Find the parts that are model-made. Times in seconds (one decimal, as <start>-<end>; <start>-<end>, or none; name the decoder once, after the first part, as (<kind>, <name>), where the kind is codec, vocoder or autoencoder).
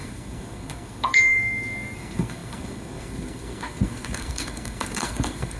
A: 0.0-5.6 (codec, SNAC)